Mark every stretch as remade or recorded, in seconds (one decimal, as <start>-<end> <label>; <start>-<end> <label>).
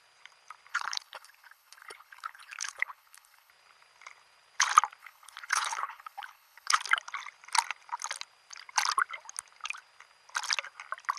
0.0-0.7 recorded; 0.7-3.5 remade; 3.5-5.0 recorded; 5.0-6.8 remade; 6.8-11.2 recorded